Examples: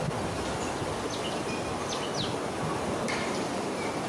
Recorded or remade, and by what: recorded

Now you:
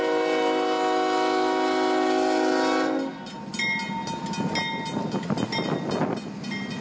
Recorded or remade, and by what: recorded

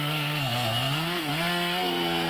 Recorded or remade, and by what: remade, codec, SNAC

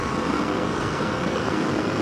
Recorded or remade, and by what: remade, codec, SNAC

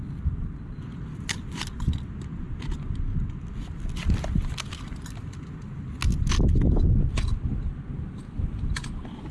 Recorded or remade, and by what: recorded